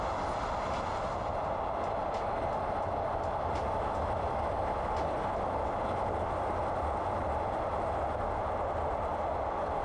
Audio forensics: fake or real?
real